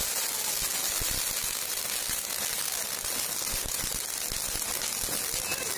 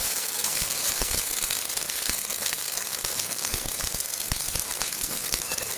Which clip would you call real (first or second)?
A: first